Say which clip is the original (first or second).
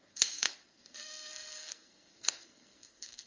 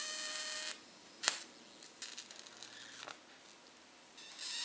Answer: second